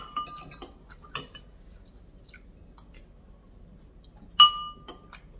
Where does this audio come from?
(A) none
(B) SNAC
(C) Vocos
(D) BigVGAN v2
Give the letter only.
A